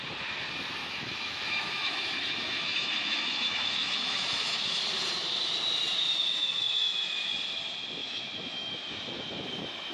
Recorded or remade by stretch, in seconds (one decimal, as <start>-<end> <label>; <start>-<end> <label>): 0.0-0.8 recorded; 0.8-4.8 remade; 4.8-6.3 recorded; 6.3-7.3 remade; 7.3-8.0 recorded; 8.0-8.9 remade; 8.9-9.9 recorded